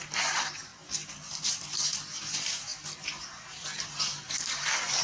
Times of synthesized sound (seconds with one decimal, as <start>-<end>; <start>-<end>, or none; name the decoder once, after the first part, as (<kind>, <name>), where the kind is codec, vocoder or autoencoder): none